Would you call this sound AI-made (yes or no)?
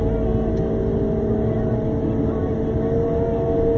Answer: no